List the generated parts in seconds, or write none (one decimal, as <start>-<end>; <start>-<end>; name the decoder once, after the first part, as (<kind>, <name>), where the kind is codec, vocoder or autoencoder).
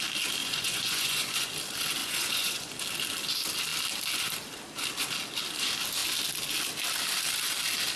0.4-1.5 (vocoder, Vocos); 2.0-2.7